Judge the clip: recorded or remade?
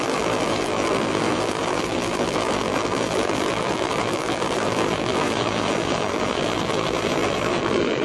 remade